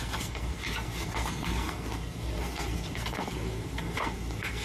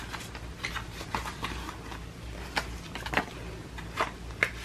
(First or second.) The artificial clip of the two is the first